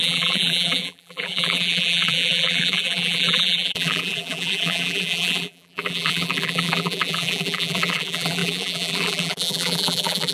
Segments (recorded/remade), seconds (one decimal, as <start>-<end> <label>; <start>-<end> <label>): 0.0-10.3 remade